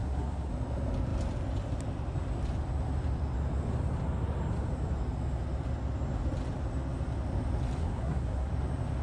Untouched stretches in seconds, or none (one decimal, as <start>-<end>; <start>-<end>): 0.5-7.8; 8.5-9.0